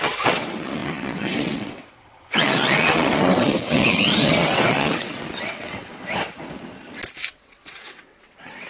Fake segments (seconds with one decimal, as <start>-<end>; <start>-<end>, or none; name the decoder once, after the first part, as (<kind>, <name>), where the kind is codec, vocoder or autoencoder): 0.0-5.9 (vocoder, WaveNeXt); 7.3-8.7